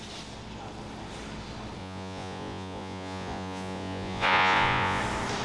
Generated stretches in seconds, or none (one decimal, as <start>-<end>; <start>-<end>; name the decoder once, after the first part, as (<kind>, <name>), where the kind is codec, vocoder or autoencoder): 1.8-5.0 (vocoder, Vocos)